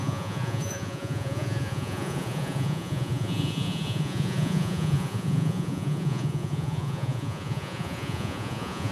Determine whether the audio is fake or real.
fake